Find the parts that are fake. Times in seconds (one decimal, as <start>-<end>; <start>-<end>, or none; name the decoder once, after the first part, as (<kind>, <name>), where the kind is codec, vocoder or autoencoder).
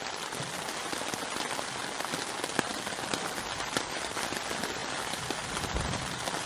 2.7-4.2 (vocoder, BigVGAN v2); 4.8-6.0